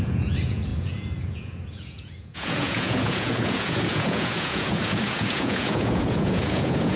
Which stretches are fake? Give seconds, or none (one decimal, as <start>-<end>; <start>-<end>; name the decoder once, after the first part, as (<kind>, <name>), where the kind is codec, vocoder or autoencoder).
0.0-7.0 (vocoder, Vocos)